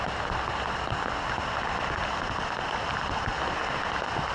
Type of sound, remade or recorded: recorded